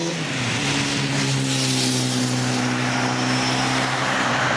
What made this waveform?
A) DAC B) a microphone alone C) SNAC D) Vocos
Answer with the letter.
B